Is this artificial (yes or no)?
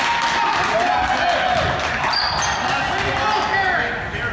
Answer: no